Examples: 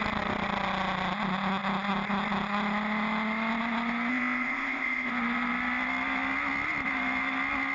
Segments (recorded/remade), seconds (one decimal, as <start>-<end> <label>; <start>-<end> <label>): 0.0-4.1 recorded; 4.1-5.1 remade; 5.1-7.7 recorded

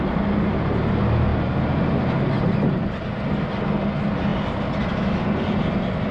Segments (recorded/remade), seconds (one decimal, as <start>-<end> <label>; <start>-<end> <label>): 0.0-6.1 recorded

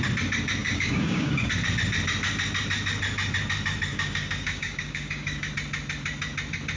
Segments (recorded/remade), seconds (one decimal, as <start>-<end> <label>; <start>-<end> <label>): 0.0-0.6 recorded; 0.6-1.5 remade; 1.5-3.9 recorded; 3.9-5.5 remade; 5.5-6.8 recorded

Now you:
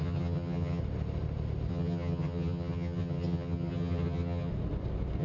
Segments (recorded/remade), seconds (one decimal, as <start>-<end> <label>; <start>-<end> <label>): 0.0-0.8 remade; 0.8-1.7 recorded; 1.7-4.5 remade; 4.5-5.2 recorded

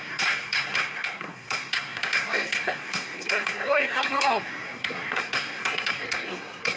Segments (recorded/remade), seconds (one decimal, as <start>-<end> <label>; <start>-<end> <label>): 0.0-6.8 remade